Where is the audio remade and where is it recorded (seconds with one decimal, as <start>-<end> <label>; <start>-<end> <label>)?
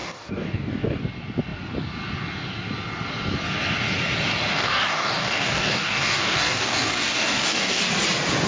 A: 0.0-1.0 remade; 1.0-4.5 recorded; 4.5-7.8 remade; 7.8-8.5 recorded